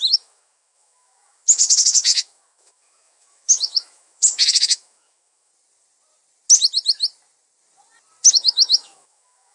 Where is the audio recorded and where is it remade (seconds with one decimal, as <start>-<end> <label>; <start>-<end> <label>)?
0.0-5.5 remade; 5.5-8.3 recorded; 8.3-9.5 remade